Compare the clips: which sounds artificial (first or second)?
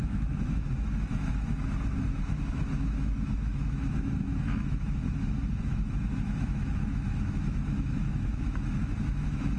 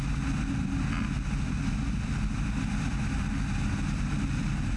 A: first